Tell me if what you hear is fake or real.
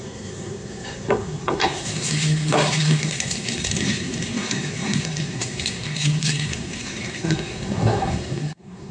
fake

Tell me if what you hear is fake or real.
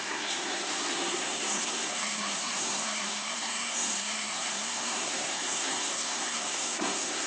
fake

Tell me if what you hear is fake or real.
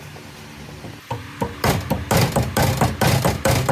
real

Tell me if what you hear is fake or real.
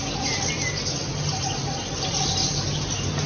real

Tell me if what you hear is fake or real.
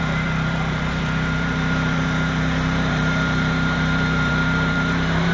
fake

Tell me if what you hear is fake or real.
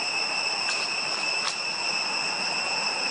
real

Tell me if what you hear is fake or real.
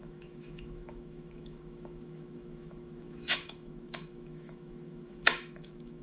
fake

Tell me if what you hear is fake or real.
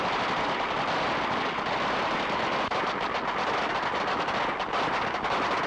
real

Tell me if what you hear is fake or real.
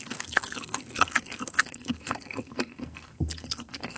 fake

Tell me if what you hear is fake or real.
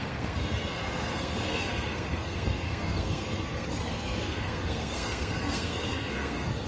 fake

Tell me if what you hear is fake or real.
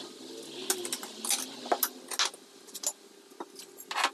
real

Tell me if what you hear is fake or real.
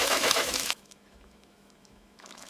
fake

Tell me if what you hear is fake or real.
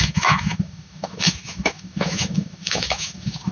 fake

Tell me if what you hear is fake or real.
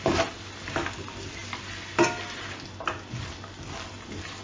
real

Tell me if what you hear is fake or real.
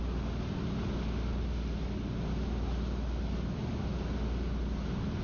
real